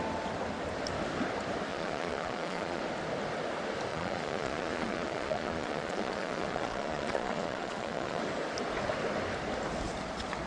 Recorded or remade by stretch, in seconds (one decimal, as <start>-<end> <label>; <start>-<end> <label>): 0.0-1.7 recorded; 1.7-2.8 remade; 2.8-3.9 recorded; 3.9-8.2 remade; 8.2-10.5 recorded